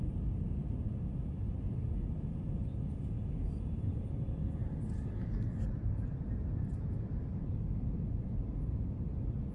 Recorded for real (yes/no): yes